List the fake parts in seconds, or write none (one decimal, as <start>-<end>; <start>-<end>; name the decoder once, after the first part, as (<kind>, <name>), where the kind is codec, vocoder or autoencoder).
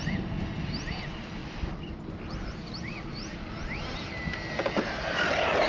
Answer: none